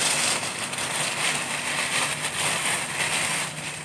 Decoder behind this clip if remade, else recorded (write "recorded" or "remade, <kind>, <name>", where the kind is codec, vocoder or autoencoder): remade, vocoder, BigVGAN v2